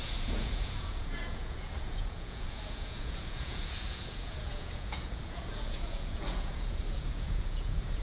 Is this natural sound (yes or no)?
no